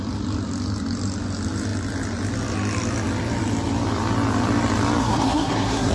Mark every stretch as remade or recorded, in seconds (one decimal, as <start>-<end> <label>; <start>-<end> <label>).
0.0-5.0 recorded; 5.0-5.9 remade